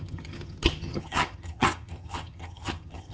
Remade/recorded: remade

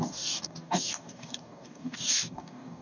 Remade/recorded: remade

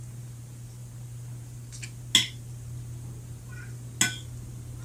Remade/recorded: recorded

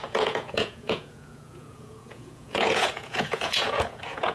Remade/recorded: remade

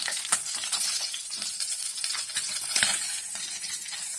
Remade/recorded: remade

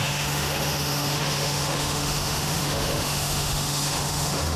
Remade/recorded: remade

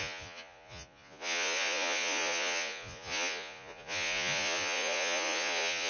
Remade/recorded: remade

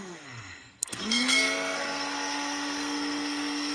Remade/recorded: remade